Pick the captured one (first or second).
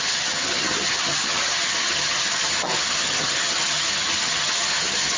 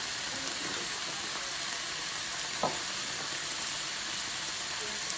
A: second